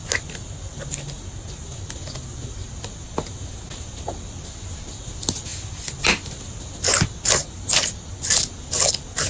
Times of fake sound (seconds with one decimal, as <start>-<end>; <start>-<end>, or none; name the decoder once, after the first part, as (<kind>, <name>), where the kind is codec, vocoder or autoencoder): none